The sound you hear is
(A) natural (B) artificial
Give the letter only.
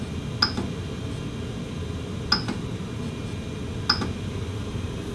A